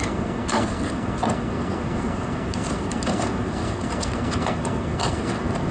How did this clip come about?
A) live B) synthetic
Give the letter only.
B